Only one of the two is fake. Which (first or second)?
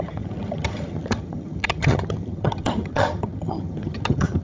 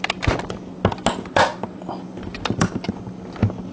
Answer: first